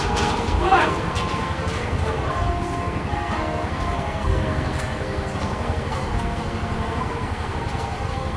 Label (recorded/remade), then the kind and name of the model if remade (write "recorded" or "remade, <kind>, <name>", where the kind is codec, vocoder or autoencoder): remade, codec, SNAC